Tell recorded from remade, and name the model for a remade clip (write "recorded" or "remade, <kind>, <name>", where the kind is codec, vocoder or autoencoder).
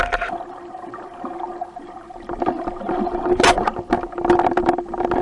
recorded